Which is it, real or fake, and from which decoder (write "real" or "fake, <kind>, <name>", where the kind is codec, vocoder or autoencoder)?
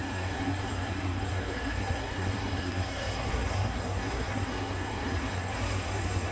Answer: fake, codec, SNAC